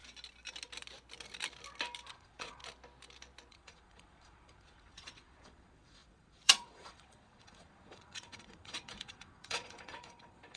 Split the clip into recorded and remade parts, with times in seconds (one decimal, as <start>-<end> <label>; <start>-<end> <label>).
0.0-2.1 recorded; 2.1-2.6 remade; 2.6-3.5 recorded; 3.5-10.6 remade